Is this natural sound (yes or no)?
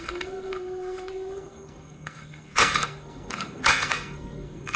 no